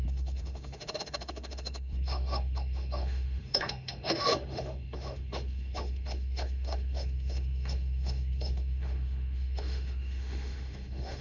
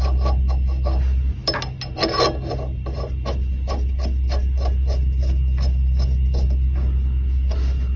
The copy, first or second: first